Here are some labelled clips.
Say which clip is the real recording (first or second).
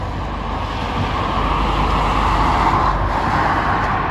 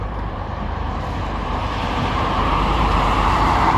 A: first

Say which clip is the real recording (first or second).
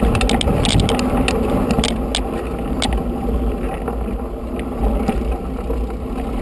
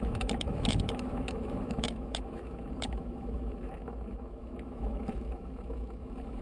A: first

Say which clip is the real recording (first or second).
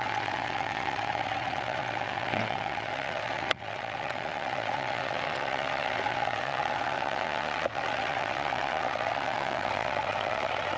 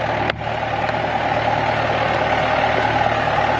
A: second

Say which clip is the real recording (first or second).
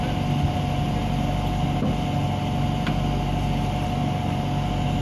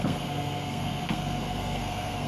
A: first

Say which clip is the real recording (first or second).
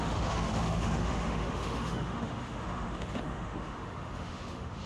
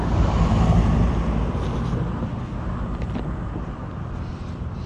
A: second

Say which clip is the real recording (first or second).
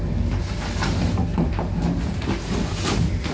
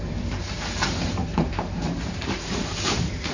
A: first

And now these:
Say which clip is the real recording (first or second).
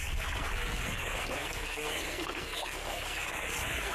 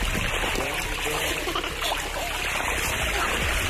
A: second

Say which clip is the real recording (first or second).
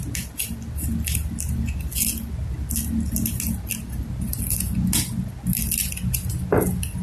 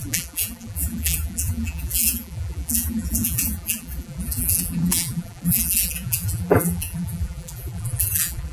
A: first